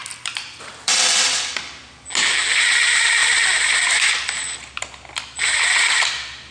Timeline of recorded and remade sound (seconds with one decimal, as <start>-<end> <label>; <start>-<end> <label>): 0.0-1.5 remade; 1.5-3.2 recorded; 3.2-4.8 remade; 4.8-6.5 recorded